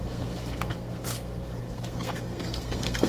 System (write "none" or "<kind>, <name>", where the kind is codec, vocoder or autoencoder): codec, SNAC